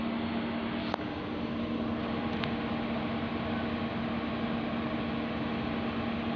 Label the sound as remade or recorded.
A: recorded